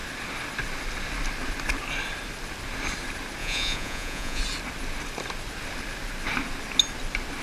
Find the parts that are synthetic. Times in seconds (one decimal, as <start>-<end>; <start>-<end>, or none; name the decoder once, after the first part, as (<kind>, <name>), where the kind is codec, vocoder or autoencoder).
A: 3.4-4.4 (vocoder, Vocos)